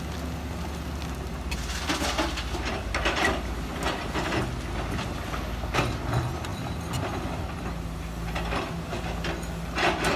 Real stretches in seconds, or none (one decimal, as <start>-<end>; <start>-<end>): 0.0-6.5; 7.5-10.2

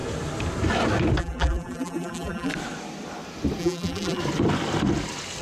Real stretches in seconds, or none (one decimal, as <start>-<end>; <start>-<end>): 0.0-1.2; 2.5-3.6; 4.2-5.4

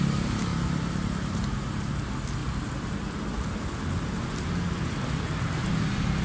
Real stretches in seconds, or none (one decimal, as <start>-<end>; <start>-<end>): 0.0-0.5; 1.9-6.2

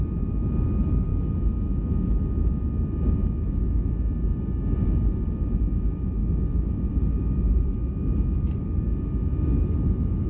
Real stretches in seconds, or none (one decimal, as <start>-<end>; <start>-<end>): 0.0-6.2; 8.8-10.3